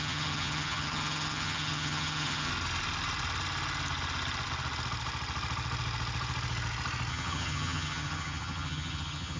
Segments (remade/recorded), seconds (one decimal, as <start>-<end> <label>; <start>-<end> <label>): 0.0-2.5 remade; 2.5-7.1 recorded; 7.1-9.4 remade